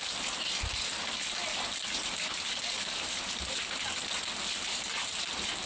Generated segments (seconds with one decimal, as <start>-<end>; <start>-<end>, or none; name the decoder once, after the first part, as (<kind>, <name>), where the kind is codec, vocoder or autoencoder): none